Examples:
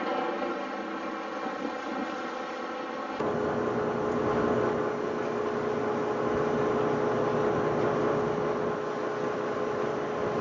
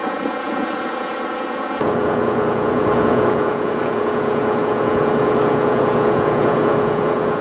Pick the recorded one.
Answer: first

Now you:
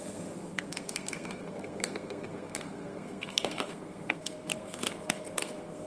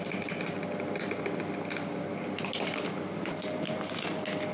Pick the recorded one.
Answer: second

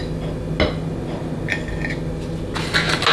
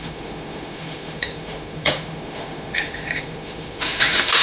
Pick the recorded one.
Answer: first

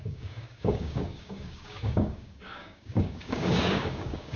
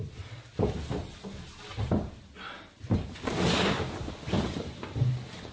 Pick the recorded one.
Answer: second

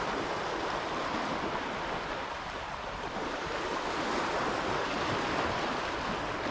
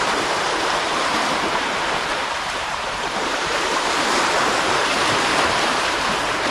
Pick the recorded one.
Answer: first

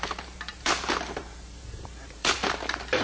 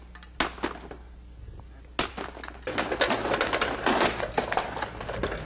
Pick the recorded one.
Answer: second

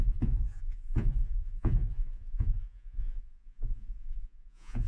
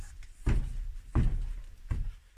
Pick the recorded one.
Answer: second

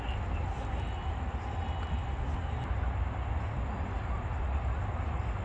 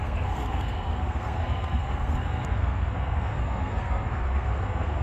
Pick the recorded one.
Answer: first